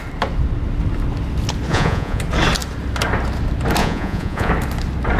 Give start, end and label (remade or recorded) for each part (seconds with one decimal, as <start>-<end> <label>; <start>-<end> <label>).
0.0-1.7 recorded; 1.7-2.2 remade; 2.2-3.8 recorded; 3.8-4.5 remade; 4.5-5.2 recorded